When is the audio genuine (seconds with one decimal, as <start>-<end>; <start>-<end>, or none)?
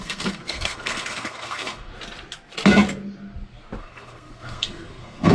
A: 1.9-3.8